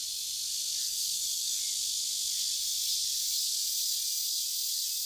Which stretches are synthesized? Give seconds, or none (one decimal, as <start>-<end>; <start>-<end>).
0.8-1.6

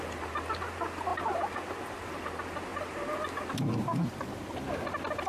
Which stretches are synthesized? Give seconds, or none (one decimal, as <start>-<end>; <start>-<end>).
none